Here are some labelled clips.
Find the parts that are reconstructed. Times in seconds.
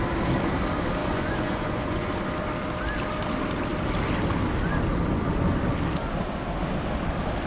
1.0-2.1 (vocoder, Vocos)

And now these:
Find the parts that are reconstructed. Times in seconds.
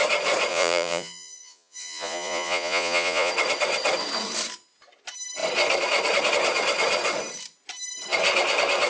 0.5-3.3 (vocoder, Vocos)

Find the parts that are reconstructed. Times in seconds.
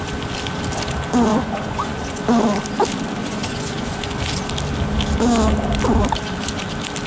1.3-2.2 (vocoder, Vocos); 3.2-4.1